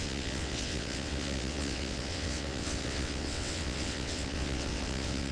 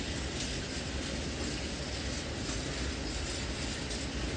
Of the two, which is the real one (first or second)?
second